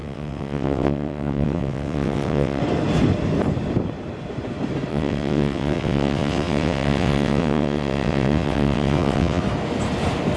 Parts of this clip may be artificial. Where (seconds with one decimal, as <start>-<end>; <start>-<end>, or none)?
0.0-2.6; 4.9-9.4